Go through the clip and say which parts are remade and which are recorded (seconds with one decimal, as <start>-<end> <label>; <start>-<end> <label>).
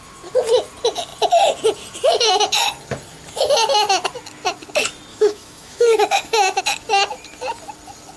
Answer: 0.0-5.1 recorded; 5.1-6.6 remade; 6.6-8.2 recorded